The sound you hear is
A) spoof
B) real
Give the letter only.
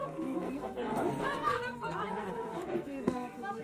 A